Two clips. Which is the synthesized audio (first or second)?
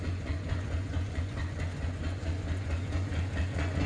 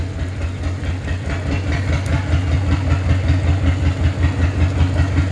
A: first